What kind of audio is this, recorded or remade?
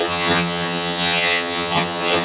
remade